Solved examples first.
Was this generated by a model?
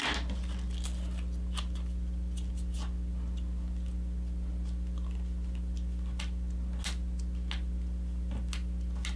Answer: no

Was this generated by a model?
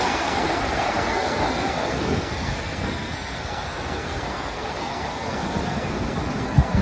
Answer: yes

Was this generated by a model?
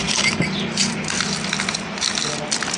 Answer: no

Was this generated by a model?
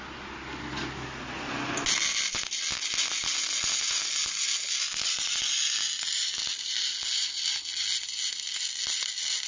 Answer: no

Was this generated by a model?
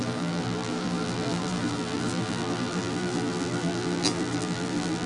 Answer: yes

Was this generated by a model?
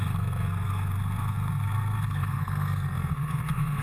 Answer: yes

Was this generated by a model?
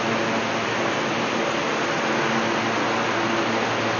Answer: no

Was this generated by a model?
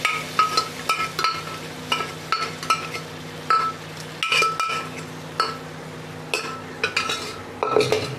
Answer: no